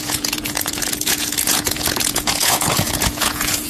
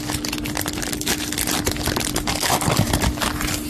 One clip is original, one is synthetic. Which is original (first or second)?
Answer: second